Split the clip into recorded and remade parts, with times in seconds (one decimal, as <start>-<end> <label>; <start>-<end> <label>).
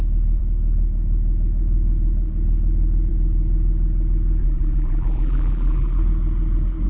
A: 0.0-4.4 recorded; 4.4-6.0 remade; 6.0-6.9 recorded